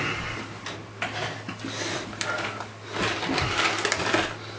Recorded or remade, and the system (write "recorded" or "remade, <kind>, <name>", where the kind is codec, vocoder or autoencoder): recorded